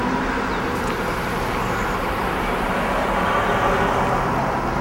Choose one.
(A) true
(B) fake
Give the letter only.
A